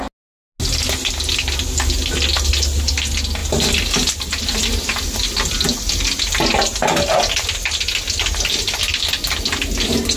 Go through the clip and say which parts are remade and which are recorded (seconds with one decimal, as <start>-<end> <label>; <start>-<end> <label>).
0.0-10.2 recorded

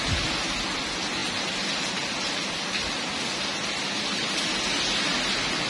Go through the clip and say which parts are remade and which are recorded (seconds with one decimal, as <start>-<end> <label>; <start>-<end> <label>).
0.0-5.7 recorded

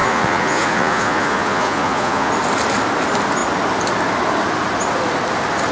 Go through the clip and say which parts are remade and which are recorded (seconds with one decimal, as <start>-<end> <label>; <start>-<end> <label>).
0.0-2.3 remade; 2.3-5.7 recorded